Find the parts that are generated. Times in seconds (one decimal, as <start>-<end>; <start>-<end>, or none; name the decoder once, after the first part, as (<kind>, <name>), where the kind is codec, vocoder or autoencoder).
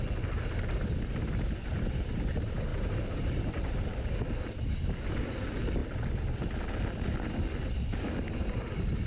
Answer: none